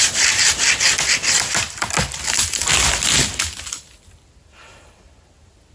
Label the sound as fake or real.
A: real